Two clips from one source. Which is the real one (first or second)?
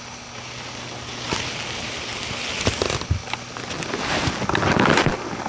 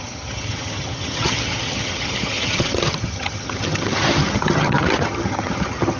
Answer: first